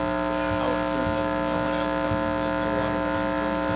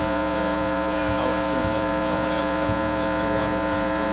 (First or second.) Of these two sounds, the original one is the first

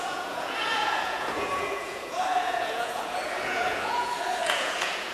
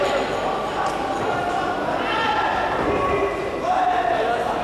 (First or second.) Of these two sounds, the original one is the second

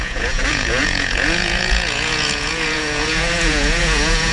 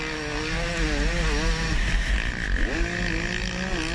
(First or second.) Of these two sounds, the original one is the second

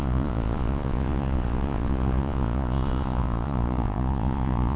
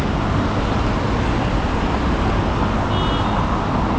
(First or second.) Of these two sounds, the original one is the second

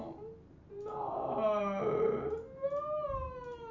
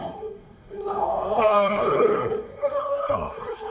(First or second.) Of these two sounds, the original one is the first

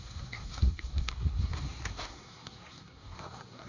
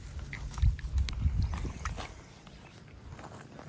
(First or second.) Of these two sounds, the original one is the second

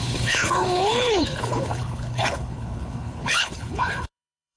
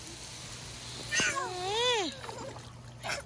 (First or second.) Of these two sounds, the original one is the second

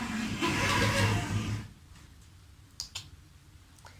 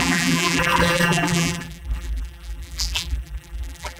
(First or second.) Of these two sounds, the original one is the first